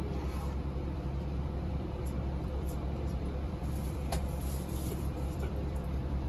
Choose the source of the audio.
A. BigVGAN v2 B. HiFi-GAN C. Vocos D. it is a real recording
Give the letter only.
A